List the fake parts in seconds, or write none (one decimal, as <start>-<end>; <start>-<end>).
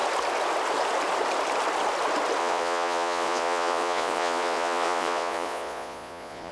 2.4-6.5